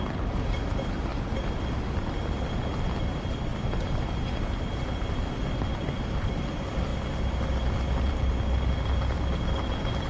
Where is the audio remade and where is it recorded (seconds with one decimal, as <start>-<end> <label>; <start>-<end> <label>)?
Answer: 0.0-10.1 recorded